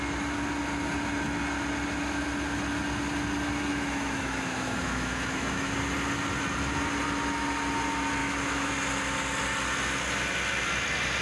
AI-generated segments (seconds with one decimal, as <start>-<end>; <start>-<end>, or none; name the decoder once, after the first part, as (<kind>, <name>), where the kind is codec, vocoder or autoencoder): 3.7-5.7 (autoencoder, DAC-VAE); 8.2-8.7